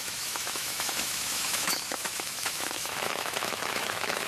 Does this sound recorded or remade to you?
remade